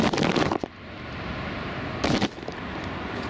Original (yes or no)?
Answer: yes